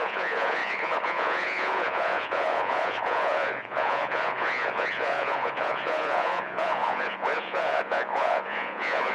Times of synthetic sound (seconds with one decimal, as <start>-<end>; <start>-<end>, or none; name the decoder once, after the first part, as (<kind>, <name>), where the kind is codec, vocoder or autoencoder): 0.0-9.1 (vocoder, Vocos)